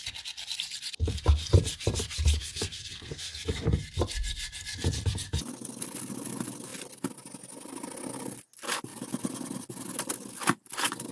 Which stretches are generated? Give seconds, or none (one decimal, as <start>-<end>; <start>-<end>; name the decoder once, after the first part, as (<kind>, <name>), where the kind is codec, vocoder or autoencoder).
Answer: 2.4-3.4 (codec, SNAC)